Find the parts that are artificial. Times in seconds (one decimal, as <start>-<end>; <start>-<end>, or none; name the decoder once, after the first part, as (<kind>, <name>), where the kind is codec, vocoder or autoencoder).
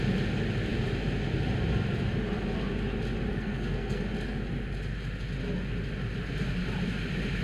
3.3-4.0 (codec, SNAC)